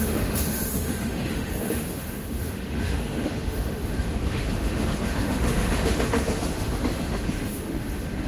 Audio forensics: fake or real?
fake